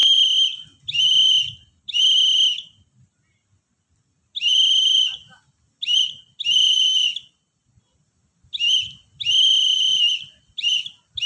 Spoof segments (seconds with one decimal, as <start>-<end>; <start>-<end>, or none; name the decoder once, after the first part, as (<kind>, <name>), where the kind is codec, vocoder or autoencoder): none